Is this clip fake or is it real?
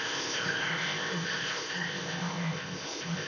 fake